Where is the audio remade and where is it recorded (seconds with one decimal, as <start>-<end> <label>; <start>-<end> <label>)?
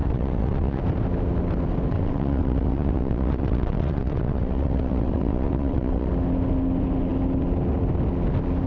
0.0-0.8 remade; 0.8-1.9 recorded; 1.9-6.1 remade; 6.1-8.7 recorded